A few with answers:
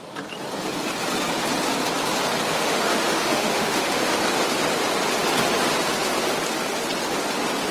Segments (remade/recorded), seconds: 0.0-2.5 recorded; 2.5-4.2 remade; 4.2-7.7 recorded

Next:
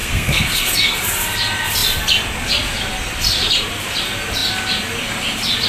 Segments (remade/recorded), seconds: 0.0-1.0 remade; 1.0-5.7 recorded

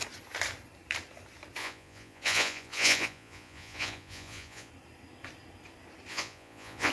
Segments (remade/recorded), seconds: 0.0-1.6 recorded; 1.6-4.7 remade; 4.7-6.1 recorded; 6.1-6.9 remade